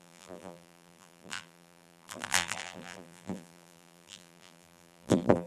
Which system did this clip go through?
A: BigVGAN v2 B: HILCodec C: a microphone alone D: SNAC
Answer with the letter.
A